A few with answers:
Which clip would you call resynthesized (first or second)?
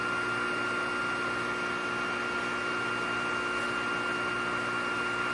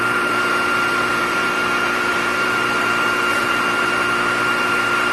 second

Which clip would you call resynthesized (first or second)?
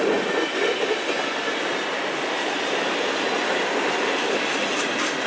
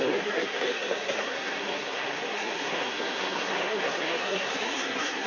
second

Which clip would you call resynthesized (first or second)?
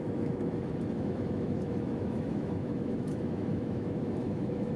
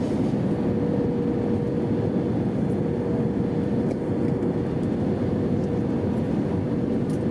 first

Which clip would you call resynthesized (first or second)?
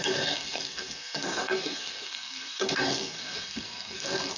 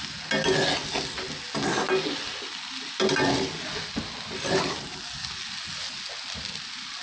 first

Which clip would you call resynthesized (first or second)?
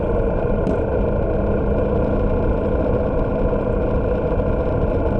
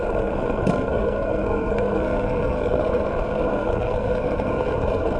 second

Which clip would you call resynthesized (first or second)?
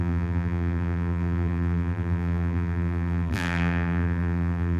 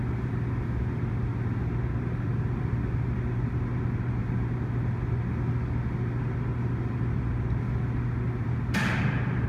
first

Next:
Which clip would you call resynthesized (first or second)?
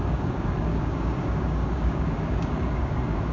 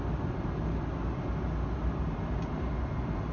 first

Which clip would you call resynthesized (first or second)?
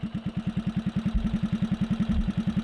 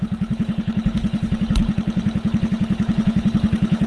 second